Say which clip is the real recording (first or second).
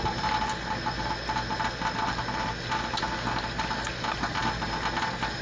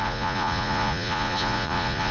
first